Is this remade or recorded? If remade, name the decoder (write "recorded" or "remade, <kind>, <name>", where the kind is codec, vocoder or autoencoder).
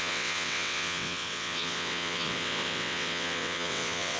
remade, vocoder, WaveNeXt